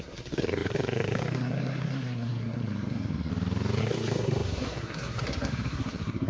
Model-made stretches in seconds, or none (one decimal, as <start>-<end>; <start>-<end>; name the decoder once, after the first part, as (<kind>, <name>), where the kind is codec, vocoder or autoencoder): 0.0-3.3 (codec, SNAC); 3.8-6.3